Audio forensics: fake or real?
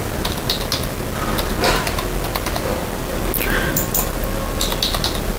real